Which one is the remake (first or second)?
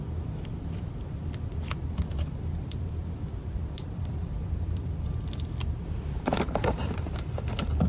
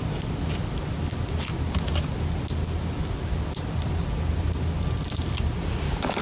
first